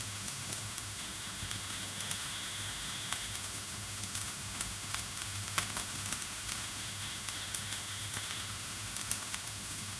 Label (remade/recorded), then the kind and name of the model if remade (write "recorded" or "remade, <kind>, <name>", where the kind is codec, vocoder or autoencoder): remade, autoencoder, DAC-VAE